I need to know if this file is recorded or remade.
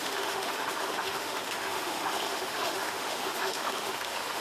remade